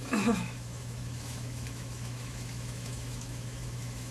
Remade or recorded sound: remade